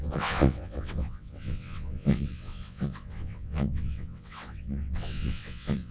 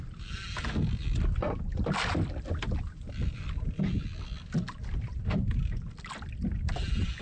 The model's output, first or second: first